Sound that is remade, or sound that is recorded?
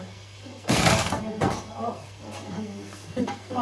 remade